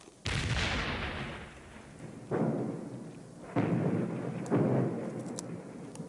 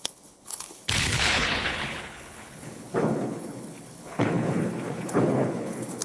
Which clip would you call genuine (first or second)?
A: first